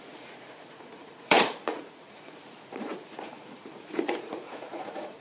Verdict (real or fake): fake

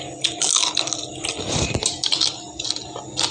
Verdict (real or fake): real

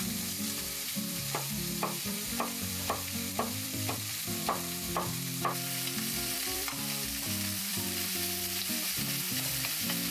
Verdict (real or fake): fake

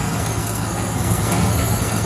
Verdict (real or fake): fake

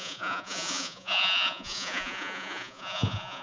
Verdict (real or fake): fake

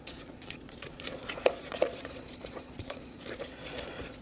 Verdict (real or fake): fake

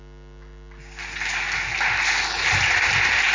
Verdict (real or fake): real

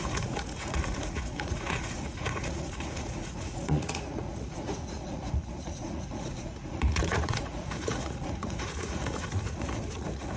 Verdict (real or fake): fake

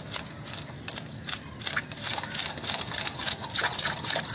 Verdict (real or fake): real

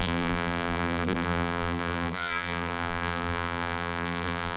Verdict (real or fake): fake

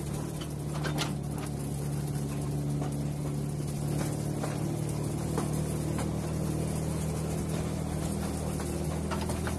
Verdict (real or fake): real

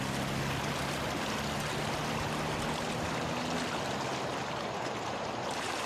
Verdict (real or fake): real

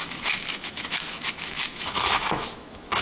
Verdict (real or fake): fake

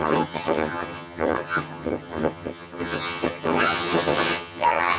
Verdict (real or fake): fake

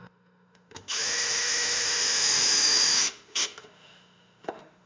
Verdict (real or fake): fake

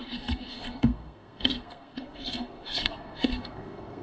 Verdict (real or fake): fake